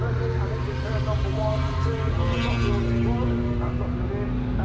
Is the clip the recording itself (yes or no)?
yes